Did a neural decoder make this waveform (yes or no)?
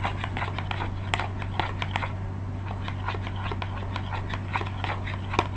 no